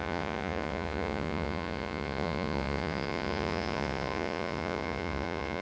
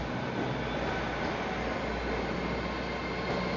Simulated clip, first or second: first